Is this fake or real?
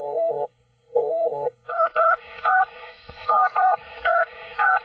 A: fake